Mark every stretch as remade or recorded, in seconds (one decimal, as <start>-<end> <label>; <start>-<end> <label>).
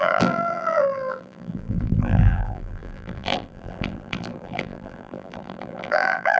0.0-6.4 remade